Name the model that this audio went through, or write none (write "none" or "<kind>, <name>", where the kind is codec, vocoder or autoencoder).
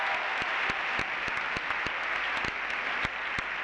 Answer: none